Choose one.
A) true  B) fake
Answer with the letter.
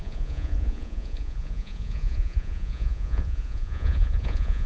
B